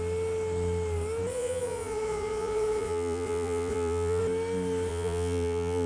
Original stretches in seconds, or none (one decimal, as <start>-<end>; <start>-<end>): 0.0-1.3; 4.2-4.9